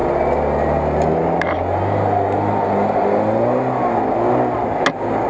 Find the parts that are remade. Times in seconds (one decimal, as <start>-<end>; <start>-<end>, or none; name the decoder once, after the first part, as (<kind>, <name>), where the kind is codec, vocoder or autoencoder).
none